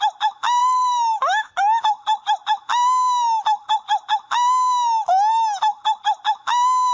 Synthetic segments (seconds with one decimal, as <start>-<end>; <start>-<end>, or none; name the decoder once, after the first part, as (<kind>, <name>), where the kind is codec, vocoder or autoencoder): 0.6-1.5 (autoencoder, DAC-VAE)